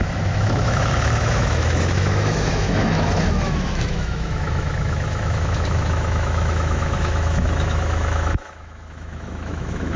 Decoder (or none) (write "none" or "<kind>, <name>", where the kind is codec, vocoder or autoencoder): autoencoder, DAC-VAE